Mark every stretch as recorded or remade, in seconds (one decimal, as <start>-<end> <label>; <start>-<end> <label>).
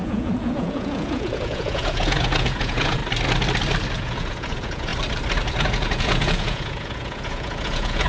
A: 0.0-3.0 remade; 3.0-3.9 recorded; 3.9-4.9 remade; 4.9-5.5 recorded; 5.5-8.1 remade